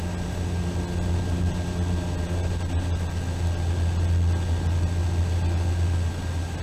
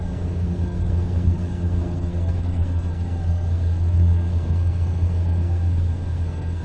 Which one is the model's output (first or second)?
second